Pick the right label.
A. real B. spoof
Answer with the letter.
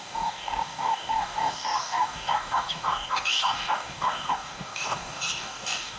B